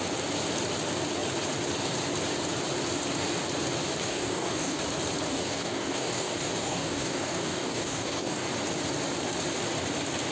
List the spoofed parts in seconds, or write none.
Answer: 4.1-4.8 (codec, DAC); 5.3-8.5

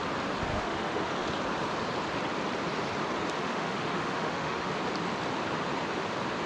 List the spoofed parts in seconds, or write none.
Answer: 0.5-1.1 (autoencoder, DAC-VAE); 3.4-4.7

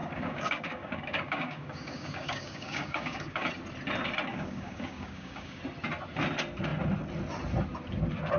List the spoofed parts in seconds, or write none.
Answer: 0.0-3.5 (codec, DAC); 4.3-5.6

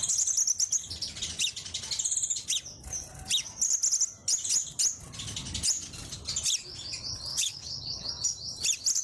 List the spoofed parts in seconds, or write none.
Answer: 7.3-8.1 (codec, HILCodec)

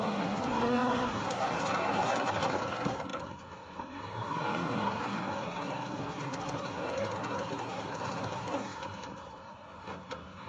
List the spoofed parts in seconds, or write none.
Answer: 0.0-10.5 (codec, SNAC)

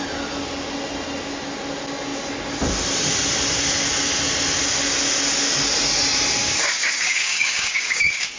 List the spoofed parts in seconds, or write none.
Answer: 6.4-8.4 (codec, DAC)